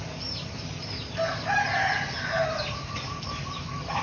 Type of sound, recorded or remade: recorded